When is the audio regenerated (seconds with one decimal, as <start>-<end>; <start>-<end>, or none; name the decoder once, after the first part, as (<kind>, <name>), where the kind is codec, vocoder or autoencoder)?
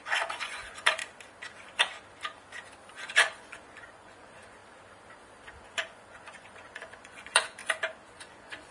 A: 0.0-1.0 (vocoder, Vocos); 2.9-4.6; 5.7-7.6; 8.1-8.7